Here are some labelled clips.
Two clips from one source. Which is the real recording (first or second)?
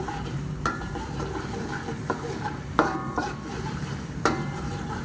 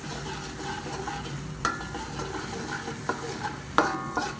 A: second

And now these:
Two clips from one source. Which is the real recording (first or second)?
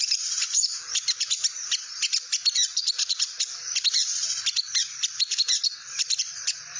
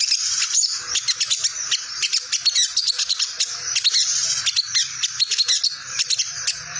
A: second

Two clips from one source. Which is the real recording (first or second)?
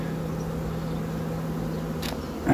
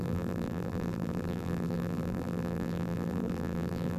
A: first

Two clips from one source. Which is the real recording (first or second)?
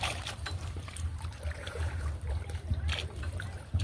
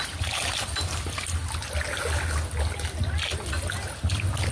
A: second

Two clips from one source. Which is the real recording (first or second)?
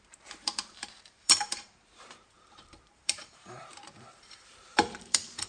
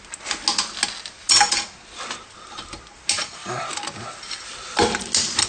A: second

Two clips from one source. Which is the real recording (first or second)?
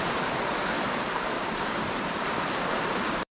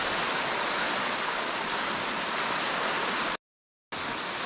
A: second